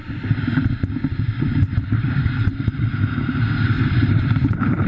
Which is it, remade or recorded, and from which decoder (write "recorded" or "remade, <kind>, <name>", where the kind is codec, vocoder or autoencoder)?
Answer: remade, vocoder, BigVGAN v2